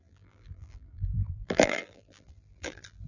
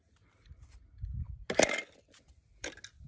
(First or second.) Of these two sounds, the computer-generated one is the first